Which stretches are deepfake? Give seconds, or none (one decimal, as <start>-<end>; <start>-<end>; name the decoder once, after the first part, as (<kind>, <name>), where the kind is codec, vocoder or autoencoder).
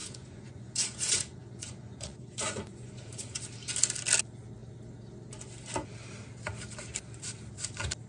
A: 0.0-3.4 (vocoder, Vocos)